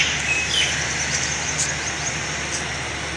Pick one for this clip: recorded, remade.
recorded